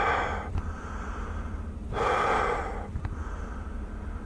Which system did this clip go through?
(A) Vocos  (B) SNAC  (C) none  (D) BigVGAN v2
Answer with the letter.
C